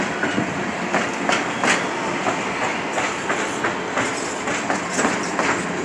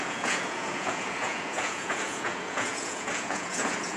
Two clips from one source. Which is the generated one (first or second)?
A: second